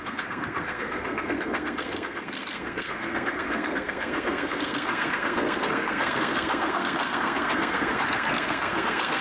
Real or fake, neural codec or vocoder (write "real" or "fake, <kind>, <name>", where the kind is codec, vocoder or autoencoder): fake, codec, SNAC